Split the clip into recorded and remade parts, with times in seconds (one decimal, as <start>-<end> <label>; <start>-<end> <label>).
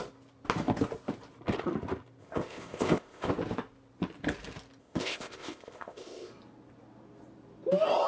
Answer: 0.0-2.2 recorded; 2.2-3.3 remade; 3.3-4.8 recorded; 4.8-6.3 remade; 6.3-8.1 recorded